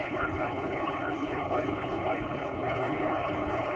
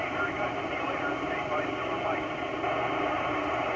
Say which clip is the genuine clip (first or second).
second